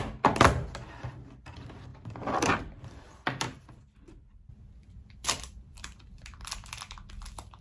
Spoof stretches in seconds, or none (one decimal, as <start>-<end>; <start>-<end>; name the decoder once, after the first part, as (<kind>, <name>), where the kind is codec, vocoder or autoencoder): 1.9-6.5 (vocoder, BigVGAN v2)